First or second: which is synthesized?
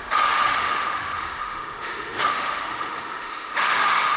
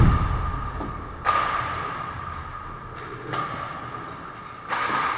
first